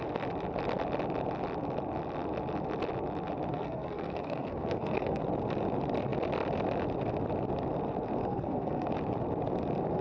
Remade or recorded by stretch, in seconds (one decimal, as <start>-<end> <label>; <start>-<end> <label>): 0.0-3.5 recorded; 3.5-5.2 remade; 5.2-8.2 recorded; 8.2-8.9 remade; 8.9-10.0 recorded

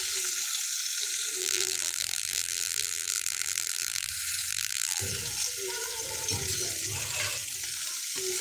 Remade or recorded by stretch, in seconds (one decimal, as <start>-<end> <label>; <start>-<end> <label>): 0.0-1.4 recorded; 1.4-4.1 remade; 4.1-4.5 recorded; 4.5-5.0 remade; 5.0-8.4 recorded

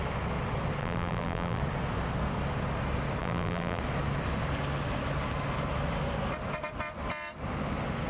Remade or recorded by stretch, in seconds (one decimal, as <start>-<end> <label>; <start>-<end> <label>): 0.0-0.8 recorded; 0.8-1.6 remade; 1.6-3.2 recorded; 3.2-3.8 remade; 3.8-8.1 recorded

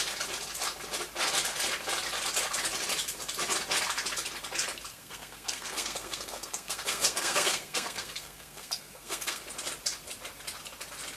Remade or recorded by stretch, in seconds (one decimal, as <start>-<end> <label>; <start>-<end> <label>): 0.0-4.9 recorded; 4.9-9.4 remade; 9.4-11.2 recorded

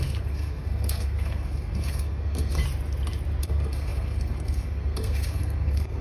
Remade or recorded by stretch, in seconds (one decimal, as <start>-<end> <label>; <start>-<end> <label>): 0.0-2.6 remade; 2.6-3.4 recorded; 3.4-6.0 remade